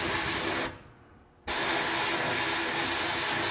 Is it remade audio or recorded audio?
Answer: recorded